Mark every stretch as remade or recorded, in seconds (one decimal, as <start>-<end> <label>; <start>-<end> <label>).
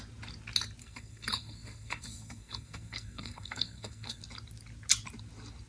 0.0-0.8 recorded; 0.8-4.2 remade; 4.2-5.7 recorded